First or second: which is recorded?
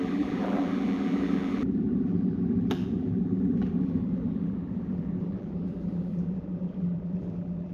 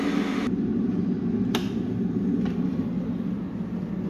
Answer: second